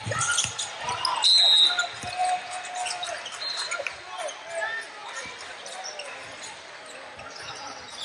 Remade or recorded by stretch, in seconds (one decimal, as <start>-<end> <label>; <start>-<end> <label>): 0.0-2.2 recorded; 2.2-2.7 remade; 2.7-5.0 recorded; 5.0-6.7 remade; 6.7-8.0 recorded